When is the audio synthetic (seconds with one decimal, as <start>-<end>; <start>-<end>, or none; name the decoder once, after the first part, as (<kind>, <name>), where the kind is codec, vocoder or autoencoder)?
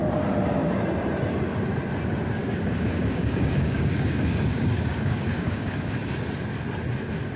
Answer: 2.4-6.0 (codec, DAC)